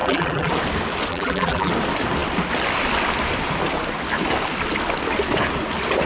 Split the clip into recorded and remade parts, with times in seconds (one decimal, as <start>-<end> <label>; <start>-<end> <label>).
0.0-0.5 remade; 0.5-1.1 recorded; 1.1-1.7 remade; 1.7-6.1 recorded

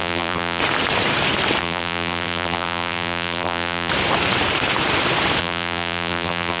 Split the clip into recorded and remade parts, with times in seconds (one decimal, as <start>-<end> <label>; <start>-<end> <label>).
0.0-0.6 remade; 0.6-1.6 recorded; 1.6-3.9 remade; 3.9-5.4 recorded; 5.4-6.6 remade

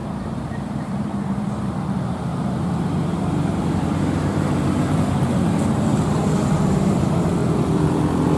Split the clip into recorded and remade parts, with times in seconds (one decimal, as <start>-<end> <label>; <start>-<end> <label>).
0.0-1.5 remade; 1.5-2.3 recorded; 2.3-7.0 remade; 7.0-8.4 recorded

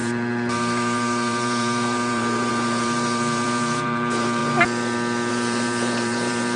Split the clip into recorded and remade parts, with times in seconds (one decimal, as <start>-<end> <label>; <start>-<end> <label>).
0.0-4.4 remade; 4.4-5.3 recorded; 5.3-6.6 remade

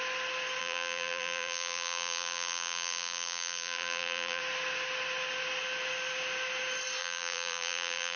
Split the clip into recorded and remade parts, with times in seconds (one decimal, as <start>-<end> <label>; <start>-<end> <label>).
0.0-0.6 recorded; 0.6-4.4 remade; 4.4-7.0 recorded; 7.0-8.2 remade

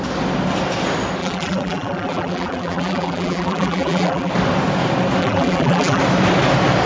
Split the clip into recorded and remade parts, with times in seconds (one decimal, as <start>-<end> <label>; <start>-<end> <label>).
0.0-1.2 recorded; 1.2-4.3 remade; 4.3-5.2 recorded; 5.2-6.0 remade; 6.0-6.9 recorded